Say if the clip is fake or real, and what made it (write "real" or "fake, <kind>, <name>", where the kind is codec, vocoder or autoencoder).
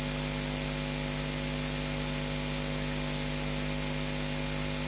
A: real